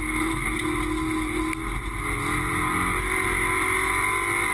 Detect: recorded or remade recorded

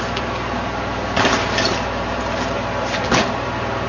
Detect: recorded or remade recorded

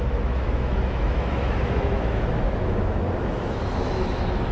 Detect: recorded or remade remade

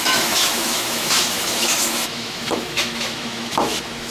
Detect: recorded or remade remade